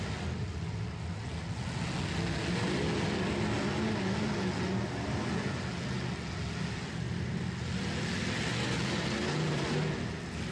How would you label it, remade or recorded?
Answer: recorded